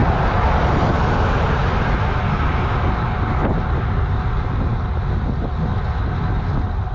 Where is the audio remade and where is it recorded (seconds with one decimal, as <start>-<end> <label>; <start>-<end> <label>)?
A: 0.0-6.9 recorded